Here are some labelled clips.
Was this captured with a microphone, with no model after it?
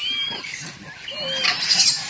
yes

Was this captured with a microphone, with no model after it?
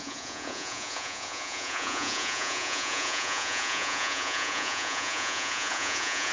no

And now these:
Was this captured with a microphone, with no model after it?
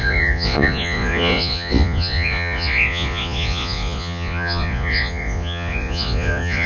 no